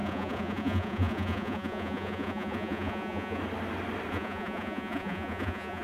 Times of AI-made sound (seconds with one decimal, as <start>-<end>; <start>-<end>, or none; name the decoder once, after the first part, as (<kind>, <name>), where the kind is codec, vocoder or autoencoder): 0.0-3.4 (vocoder, Vocos); 4.1-5.8